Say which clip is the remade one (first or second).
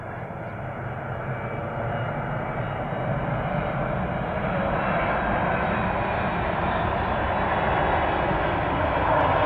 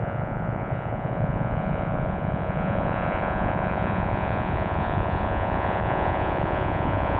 second